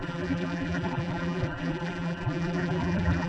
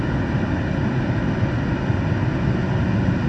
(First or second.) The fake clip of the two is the first